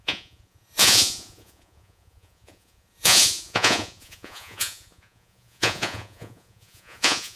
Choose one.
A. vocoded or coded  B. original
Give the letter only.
A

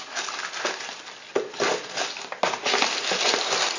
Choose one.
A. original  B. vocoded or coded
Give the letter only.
A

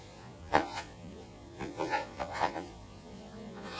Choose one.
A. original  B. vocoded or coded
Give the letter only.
B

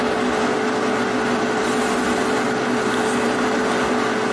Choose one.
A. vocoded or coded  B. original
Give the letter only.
B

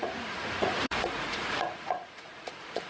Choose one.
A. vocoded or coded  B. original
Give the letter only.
A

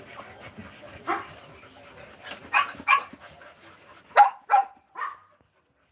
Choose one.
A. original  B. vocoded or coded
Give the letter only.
A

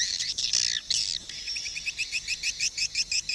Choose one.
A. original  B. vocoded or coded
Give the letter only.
A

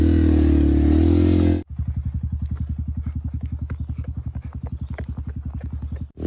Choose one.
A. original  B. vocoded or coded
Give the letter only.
A